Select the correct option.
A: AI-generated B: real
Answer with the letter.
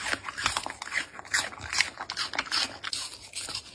B